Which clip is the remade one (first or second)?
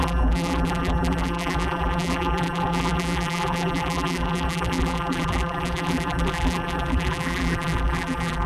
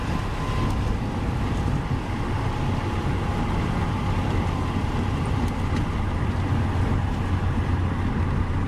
first